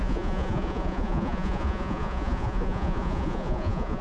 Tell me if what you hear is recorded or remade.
remade